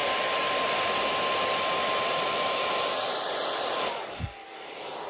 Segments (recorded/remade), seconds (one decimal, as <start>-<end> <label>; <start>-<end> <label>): 0.0-0.6 remade; 0.6-1.1 recorded; 1.1-4.2 remade; 4.2-5.1 recorded